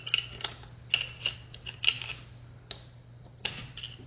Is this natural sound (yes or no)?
yes